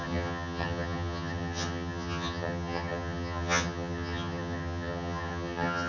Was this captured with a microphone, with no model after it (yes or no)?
no